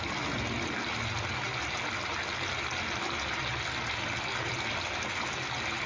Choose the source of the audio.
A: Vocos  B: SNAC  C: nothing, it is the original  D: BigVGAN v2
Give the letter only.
C